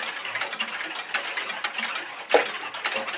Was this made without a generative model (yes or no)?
yes